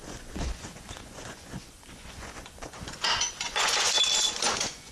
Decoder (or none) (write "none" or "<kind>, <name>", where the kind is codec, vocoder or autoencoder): vocoder, Vocos